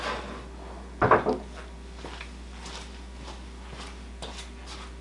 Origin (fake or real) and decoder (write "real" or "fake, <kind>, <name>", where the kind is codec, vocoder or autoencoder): real